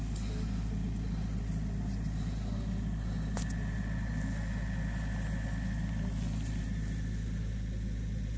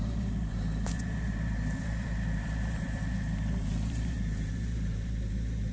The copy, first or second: second